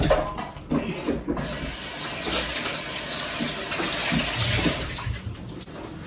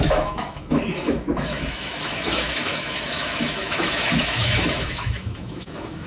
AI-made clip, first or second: second